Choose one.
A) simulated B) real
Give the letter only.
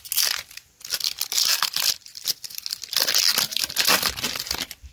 B